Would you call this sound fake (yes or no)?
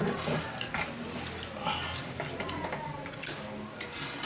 no